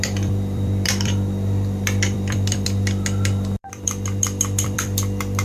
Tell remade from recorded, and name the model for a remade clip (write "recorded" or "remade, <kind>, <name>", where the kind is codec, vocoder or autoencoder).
remade, vocoder, BigVGAN v2